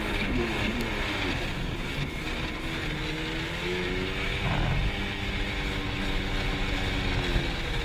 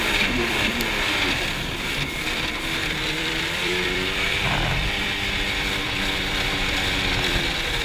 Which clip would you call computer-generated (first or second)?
second